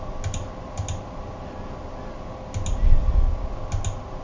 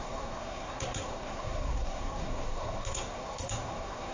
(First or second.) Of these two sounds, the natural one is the first